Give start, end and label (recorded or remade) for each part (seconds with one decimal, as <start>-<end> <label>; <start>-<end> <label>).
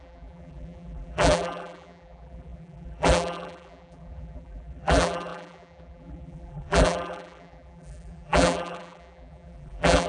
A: 0.0-10.1 remade